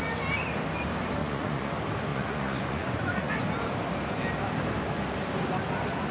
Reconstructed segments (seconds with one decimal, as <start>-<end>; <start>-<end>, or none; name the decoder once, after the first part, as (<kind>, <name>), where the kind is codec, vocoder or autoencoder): 1.2-1.7 (vocoder, Vocos); 2.1-3.3